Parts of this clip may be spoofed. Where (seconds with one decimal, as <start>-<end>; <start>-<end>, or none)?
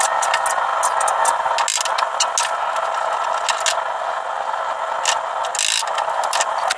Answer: none